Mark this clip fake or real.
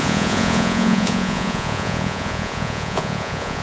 fake